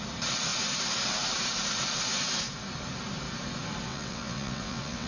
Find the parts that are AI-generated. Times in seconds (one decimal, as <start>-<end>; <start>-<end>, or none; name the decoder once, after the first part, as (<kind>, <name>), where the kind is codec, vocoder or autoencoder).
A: 3.9-5.1 (vocoder, WaveNeXt)